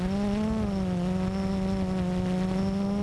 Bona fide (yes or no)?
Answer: yes